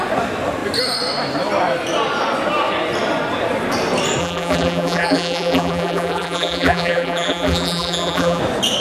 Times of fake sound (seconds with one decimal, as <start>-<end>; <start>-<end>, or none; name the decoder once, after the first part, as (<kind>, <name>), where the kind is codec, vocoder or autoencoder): 4.2-8.4 (vocoder, BigVGAN v2)